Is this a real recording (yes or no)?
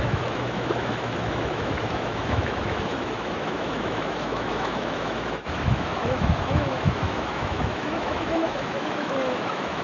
no